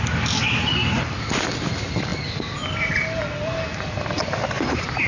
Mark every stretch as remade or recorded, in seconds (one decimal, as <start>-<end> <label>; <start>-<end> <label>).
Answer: 0.0-5.1 recorded